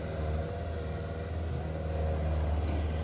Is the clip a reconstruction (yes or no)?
no